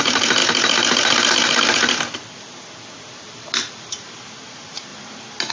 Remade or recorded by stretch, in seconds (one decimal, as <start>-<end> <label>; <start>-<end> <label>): 0.0-0.4 remade; 0.4-3.7 recorded; 3.7-5.5 remade